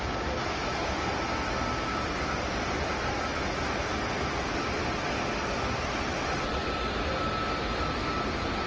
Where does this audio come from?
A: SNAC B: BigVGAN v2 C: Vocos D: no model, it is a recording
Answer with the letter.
D